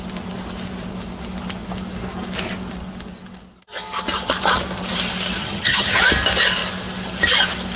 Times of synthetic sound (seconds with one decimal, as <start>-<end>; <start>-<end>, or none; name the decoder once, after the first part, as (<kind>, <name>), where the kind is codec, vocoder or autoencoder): 5.4-6.0 (vocoder, HiFi-GAN)